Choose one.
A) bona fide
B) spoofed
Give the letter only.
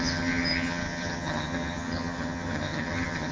B